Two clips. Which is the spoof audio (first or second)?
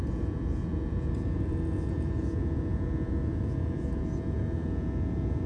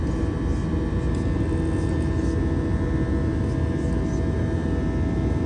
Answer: first